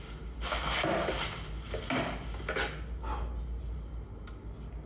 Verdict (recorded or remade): recorded